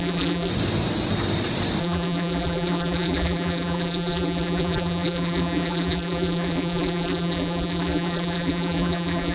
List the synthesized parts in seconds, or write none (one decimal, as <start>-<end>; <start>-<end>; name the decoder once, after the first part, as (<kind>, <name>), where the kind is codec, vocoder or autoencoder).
0.0-0.5 (vocoder, BigVGAN v2); 1.8-9.3